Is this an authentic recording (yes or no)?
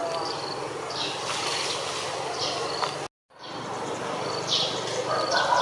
yes